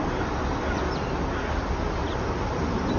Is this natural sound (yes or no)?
yes